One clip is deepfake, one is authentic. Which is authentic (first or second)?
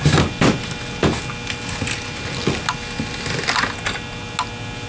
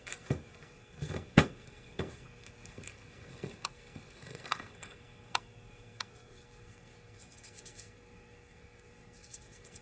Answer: first